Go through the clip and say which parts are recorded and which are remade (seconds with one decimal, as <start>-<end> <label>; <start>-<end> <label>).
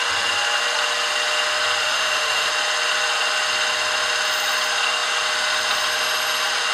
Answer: 0.0-1.8 recorded; 1.8-2.5 remade; 2.5-6.7 recorded